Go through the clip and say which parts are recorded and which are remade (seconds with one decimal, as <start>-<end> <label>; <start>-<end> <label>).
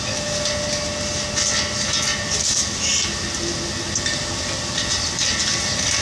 0.0-6.0 recorded